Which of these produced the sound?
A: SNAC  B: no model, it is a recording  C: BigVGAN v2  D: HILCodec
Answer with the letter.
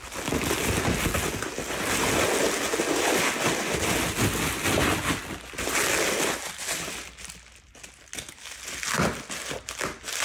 B